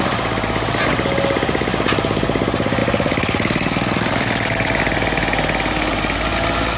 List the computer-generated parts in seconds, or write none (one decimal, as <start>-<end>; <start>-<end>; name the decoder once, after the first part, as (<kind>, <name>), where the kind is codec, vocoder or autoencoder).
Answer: none